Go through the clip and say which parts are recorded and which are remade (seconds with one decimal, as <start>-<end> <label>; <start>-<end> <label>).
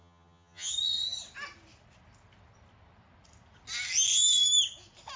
0.0-0.7 remade; 0.7-5.2 recorded